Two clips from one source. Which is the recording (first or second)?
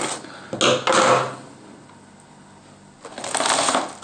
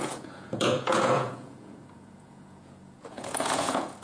first